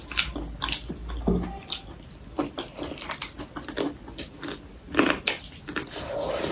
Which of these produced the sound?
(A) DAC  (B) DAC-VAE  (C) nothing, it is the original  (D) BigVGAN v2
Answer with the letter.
C